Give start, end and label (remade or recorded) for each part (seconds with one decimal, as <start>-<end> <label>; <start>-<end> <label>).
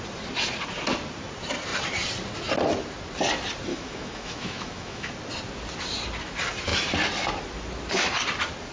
0.0-3.7 recorded; 3.7-5.1 remade; 5.1-8.7 recorded